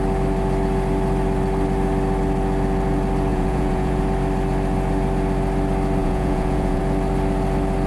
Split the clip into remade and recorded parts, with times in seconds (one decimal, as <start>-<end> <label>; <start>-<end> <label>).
0.0-3.3 recorded; 3.3-4.0 remade; 4.0-6.0 recorded; 6.0-6.8 remade; 6.8-7.9 recorded